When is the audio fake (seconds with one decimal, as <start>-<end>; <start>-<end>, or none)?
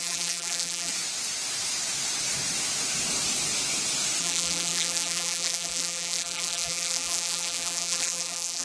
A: 0.0-0.9; 4.2-8.6